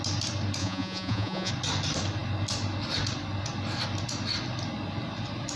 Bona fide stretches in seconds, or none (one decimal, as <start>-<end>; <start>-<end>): 0.0-0.6; 1.5-5.6

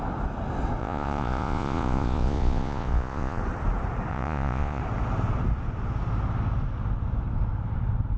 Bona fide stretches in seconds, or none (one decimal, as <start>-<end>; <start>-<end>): 0.0-0.8; 3.4-4.1; 4.8-8.2

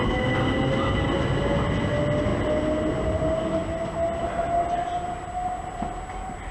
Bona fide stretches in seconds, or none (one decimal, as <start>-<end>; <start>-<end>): 0.0-6.5